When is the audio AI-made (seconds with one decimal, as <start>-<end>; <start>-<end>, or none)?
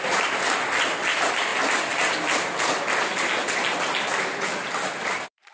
1.5-3.0